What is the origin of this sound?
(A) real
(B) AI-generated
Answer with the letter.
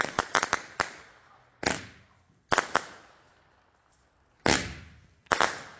A